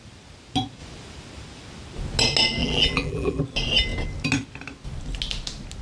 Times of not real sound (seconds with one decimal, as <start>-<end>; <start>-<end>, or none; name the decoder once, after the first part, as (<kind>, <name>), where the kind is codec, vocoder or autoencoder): 2.6-3.4 (vocoder, BigVGAN v2)